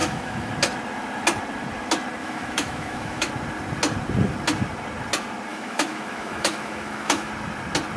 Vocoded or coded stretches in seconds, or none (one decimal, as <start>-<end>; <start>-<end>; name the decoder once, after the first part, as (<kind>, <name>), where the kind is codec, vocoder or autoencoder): 0.0-0.5 (autoencoder, DAC-VAE); 2.2-3.3; 5.5-7.3